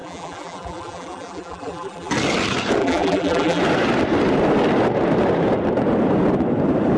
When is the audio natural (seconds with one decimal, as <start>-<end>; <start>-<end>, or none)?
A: 2.1-2.8; 3.6-7.0